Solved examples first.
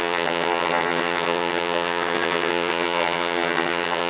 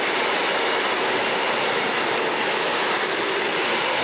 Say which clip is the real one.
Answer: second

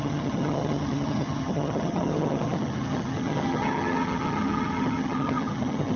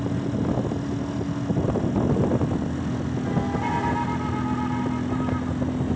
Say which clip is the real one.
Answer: second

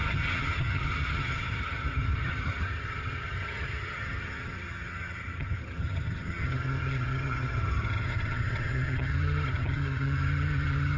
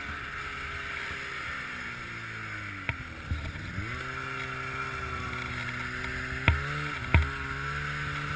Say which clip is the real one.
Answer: second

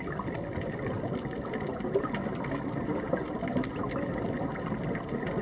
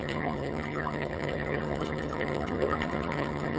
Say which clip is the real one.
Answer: first